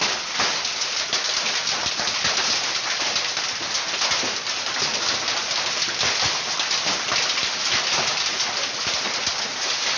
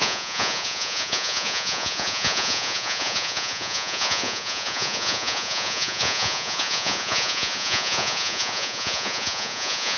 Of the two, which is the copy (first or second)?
second